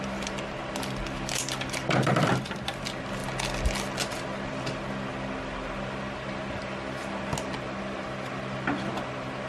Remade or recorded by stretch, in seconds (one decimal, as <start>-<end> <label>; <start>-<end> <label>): 0.0-9.5 recorded